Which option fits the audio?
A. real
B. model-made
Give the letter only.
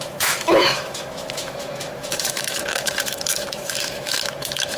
B